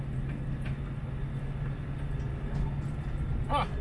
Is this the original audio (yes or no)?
yes